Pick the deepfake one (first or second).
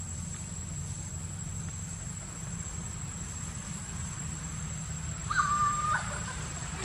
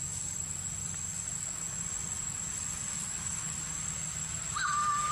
first